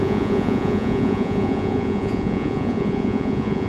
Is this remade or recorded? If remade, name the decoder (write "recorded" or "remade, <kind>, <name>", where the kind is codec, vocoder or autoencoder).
remade, vocoder, Vocos